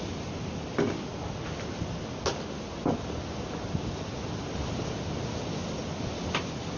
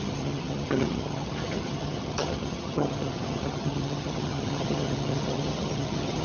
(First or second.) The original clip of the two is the first